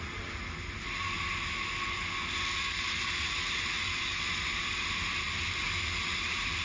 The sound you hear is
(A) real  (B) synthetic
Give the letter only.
A